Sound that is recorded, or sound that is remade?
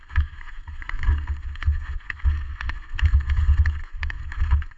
remade